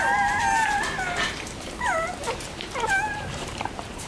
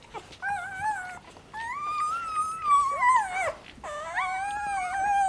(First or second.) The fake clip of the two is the first